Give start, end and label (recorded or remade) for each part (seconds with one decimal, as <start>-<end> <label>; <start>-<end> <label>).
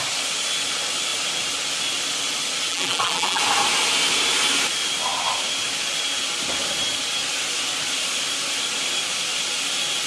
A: 0.0-2.7 recorded; 2.7-3.4 remade; 3.4-10.1 recorded